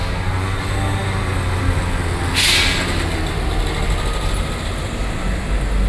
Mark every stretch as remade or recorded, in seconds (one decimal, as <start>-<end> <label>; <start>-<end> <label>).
0.0-5.9 recorded